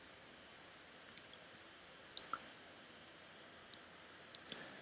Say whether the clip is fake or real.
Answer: real